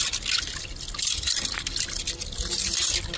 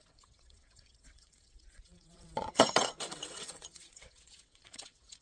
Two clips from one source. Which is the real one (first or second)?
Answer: first